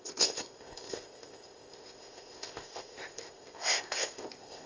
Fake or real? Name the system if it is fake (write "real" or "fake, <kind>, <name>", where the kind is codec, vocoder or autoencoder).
fake, codec, ZipCodec